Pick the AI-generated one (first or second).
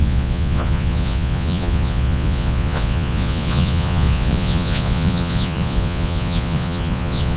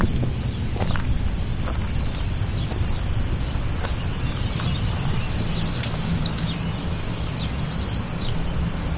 first